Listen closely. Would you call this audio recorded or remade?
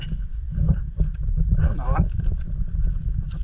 remade